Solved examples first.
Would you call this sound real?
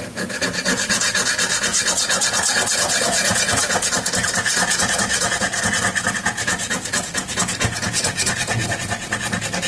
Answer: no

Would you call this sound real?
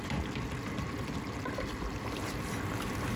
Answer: yes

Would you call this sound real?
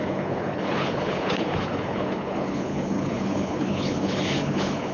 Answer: no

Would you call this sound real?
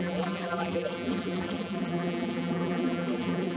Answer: no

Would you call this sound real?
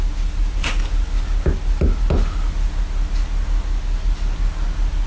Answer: yes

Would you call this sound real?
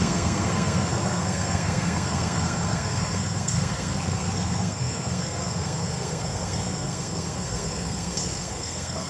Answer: no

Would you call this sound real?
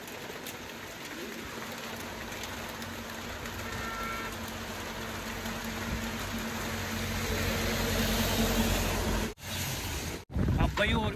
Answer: yes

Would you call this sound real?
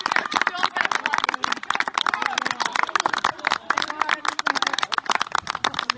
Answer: no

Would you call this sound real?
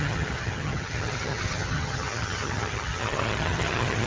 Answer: no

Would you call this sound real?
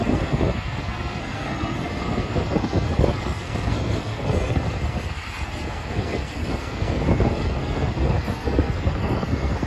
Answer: no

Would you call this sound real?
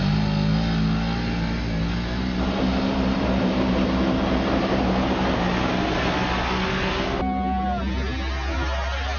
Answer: yes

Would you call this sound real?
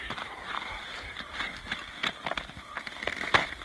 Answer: yes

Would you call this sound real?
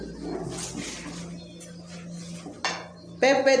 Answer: yes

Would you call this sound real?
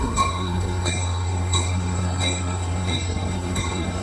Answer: no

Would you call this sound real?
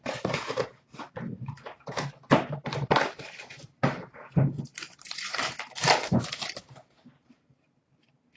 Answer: no